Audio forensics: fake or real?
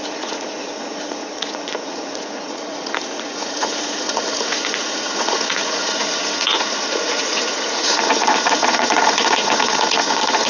fake